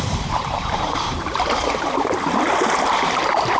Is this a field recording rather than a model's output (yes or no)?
no